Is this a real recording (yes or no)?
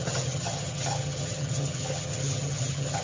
no